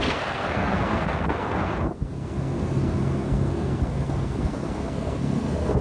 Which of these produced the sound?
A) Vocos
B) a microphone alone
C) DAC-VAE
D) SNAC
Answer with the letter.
D